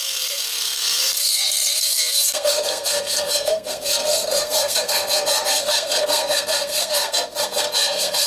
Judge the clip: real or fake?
fake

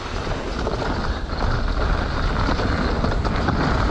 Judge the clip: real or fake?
real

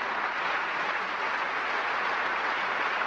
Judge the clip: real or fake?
fake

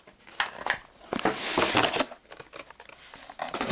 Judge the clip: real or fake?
real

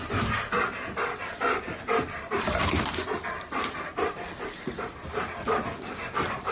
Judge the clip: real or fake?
fake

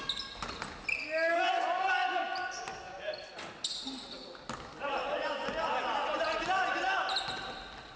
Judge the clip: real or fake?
real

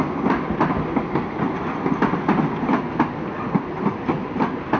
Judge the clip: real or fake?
real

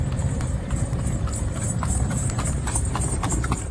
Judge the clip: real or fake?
real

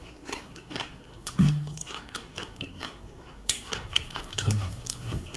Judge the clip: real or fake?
fake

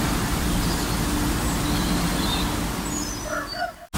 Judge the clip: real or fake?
real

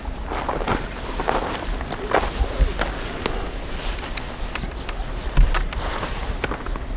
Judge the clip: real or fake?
real